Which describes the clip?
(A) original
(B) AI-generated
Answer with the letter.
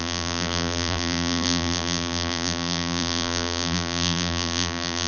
B